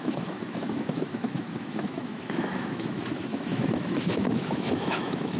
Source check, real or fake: fake